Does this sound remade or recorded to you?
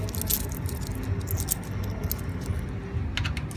recorded